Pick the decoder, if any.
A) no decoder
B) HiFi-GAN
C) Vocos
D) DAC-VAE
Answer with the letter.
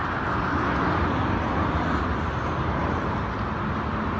A